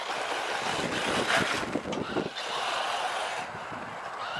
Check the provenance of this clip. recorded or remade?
recorded